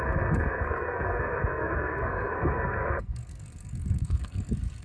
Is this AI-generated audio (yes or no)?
yes